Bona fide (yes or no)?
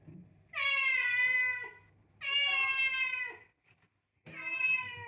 yes